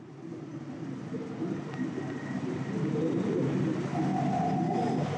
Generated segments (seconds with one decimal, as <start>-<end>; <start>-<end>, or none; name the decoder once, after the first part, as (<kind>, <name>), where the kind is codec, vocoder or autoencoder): none